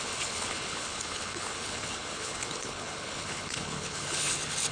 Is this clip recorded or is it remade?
remade